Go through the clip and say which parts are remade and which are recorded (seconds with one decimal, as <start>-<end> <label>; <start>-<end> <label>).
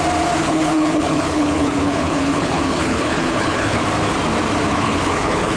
0.0-0.4 recorded; 0.4-3.8 remade; 3.8-4.7 recorded; 4.7-5.6 remade